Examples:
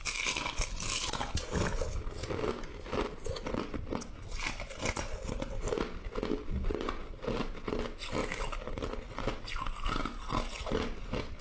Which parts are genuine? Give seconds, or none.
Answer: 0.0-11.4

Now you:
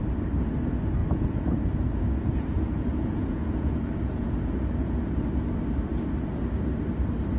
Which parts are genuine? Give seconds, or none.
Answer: 0.0-1.0; 5.2-7.4

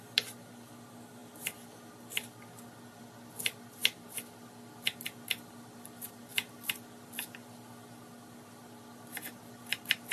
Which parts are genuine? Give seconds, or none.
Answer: 0.0-10.1

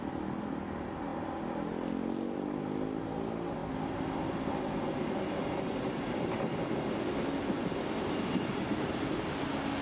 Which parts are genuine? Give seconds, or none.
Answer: 0.0-9.8

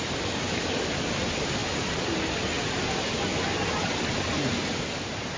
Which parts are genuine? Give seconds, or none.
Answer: 0.0-5.4